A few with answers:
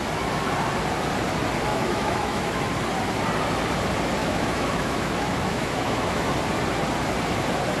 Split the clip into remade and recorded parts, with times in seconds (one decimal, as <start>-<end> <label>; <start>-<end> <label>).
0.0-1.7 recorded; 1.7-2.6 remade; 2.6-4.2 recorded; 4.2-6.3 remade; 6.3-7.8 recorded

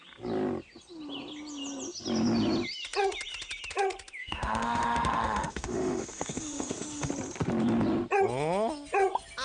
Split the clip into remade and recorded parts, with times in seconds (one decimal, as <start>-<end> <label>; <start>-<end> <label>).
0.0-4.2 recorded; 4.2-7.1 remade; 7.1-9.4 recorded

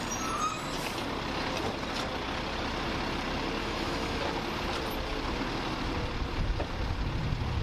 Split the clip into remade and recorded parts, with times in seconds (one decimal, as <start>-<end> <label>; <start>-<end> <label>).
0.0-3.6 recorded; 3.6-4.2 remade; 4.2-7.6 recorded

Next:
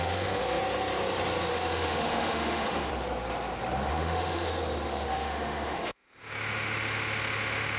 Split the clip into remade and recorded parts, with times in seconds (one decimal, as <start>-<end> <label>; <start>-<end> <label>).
0.0-0.6 remade; 0.6-1.5 recorded; 1.5-2.9 remade; 2.9-3.9 recorded; 3.9-4.5 remade; 4.5-5.1 recorded; 5.1-7.8 remade